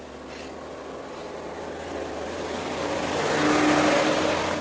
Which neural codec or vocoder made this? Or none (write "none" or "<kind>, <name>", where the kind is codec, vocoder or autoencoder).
none